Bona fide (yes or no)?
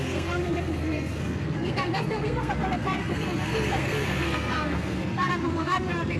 no